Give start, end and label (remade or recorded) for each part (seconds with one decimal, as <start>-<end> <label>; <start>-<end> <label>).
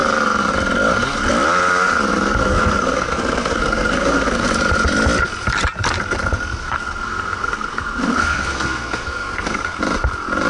0.0-2.4 recorded; 2.4-4.5 remade; 4.5-6.6 recorded; 6.6-9.8 remade; 9.8-10.5 recorded